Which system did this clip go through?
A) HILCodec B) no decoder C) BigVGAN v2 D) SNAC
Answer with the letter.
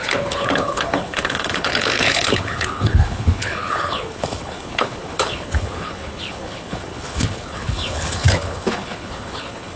A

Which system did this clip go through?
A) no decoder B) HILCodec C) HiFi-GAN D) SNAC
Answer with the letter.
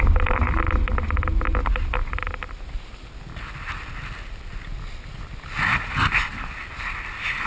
A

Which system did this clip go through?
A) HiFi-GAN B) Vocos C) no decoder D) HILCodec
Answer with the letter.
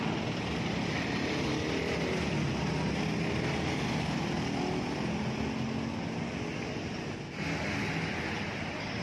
C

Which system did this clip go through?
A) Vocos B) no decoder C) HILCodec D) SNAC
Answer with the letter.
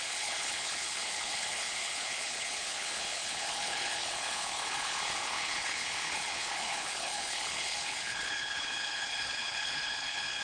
C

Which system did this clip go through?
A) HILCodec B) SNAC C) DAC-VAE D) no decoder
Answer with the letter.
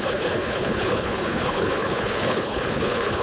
A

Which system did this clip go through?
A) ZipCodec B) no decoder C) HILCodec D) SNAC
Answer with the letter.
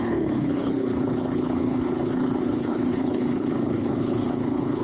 C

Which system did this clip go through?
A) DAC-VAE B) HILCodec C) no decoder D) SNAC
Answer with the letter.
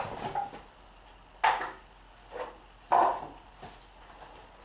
C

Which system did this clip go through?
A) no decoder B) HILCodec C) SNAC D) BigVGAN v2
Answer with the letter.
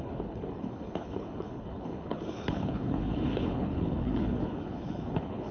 B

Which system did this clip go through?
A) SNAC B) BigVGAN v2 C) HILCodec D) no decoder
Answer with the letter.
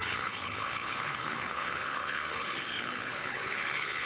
C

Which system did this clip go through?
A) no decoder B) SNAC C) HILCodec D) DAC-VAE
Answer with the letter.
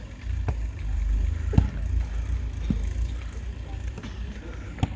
A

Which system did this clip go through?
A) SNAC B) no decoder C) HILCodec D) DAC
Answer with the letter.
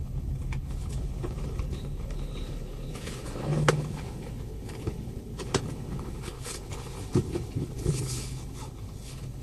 C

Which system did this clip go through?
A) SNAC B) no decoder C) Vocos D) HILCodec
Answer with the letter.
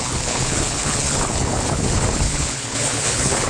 D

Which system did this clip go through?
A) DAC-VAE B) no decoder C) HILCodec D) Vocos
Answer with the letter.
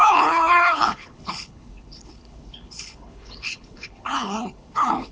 C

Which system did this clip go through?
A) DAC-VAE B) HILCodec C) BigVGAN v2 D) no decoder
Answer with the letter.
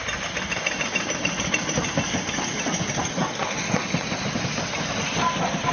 D